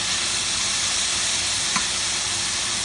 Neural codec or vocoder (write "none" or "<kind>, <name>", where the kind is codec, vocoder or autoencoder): none